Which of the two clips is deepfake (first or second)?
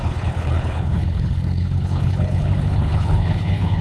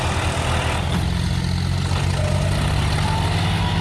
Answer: first